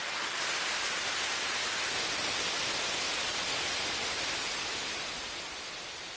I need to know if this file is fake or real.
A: real